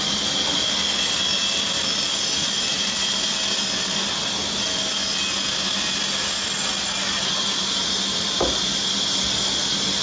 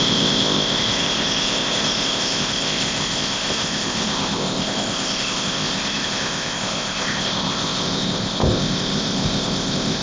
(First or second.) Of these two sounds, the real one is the first